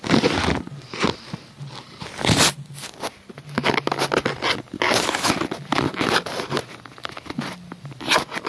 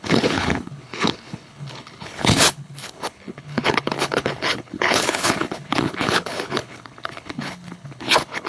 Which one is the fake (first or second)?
second